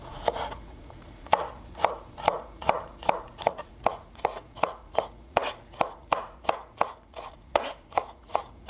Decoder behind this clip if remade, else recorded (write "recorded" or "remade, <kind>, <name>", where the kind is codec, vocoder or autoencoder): remade, vocoder, Vocos